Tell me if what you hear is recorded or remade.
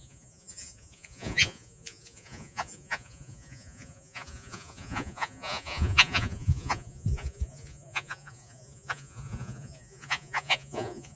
remade